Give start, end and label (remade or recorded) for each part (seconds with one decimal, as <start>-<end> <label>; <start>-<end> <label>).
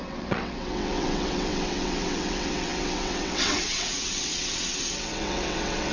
0.0-5.9 remade